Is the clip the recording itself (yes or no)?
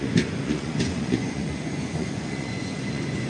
no